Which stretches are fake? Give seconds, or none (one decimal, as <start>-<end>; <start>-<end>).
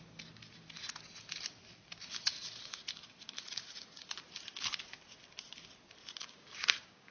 6.2-7.1